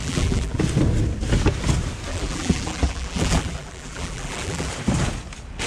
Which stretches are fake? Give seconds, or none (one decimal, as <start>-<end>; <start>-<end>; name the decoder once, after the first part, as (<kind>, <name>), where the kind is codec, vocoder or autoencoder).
0.0-0.6 (vocoder, BigVGAN v2); 2.1-4.7

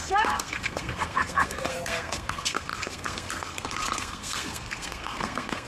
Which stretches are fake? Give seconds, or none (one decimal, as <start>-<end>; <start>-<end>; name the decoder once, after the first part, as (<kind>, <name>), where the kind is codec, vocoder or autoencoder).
0.0-5.7 (codec, SNAC)